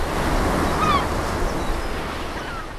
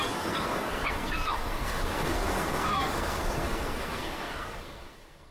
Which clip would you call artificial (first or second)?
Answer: second